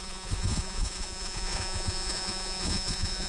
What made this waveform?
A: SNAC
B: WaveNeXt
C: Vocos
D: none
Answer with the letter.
C